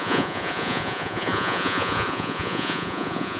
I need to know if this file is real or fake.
fake